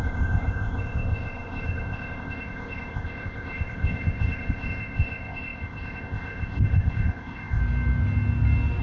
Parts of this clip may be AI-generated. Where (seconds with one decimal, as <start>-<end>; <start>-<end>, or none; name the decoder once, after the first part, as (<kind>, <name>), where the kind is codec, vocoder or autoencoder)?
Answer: 0.0-7.6 (codec, ZipCodec)

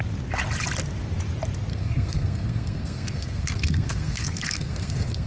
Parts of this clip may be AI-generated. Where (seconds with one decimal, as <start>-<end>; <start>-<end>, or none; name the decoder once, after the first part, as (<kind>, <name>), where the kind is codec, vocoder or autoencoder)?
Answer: 1.7-5.3 (codec, SNAC)

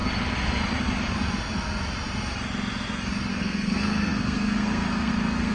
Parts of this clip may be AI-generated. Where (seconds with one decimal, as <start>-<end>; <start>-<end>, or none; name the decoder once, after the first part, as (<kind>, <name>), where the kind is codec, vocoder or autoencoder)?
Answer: 3.3-5.5 (codec, SNAC)

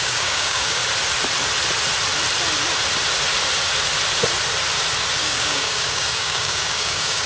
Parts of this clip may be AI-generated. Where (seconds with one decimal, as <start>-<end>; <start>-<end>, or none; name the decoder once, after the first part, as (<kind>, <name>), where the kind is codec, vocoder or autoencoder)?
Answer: 0.0-0.8 (codec, DAC); 5.2-7.3

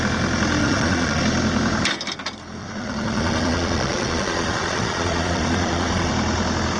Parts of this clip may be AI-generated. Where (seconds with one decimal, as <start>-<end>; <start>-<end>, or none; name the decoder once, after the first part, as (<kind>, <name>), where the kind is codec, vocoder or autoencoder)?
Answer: 0.6-1.2 (vocoder, Vocos); 2.6-6.1